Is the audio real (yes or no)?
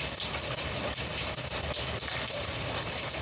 yes